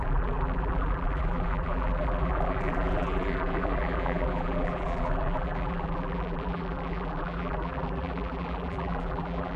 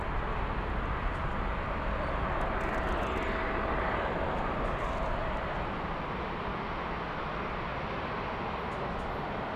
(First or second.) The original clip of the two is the second